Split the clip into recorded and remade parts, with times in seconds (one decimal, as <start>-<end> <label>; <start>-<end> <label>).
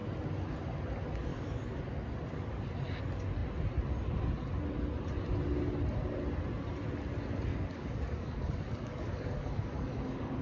0.0-1.3 recorded; 1.3-1.8 remade; 1.8-7.5 recorded; 7.5-10.4 remade